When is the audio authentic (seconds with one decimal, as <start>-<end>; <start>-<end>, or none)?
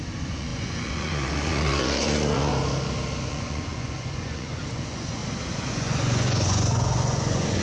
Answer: 2.5-3.3; 5.2-5.7